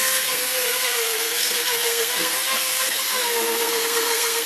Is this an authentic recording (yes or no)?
no